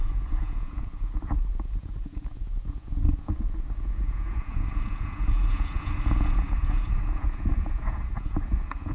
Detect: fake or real fake